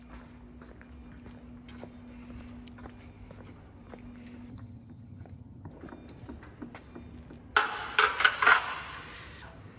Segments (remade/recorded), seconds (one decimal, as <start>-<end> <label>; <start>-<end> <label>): 0.0-4.5 recorded; 4.5-5.7 remade; 5.7-9.8 recorded

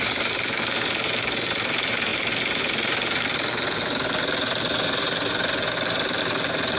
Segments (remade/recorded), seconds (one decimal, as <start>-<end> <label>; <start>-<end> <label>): 0.0-6.8 recorded

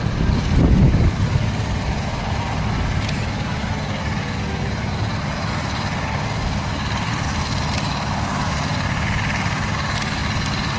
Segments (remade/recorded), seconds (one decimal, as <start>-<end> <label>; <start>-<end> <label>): 0.0-10.8 recorded

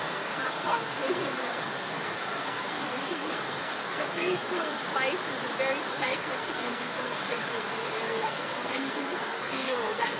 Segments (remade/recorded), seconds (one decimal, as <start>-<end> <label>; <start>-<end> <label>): 0.0-4.8 remade; 4.8-5.9 recorded; 5.9-10.2 remade

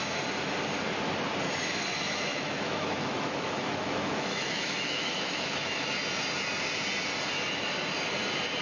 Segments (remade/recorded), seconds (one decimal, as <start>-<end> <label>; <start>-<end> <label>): 0.0-2.3 recorded; 2.3-5.9 remade; 5.9-8.6 recorded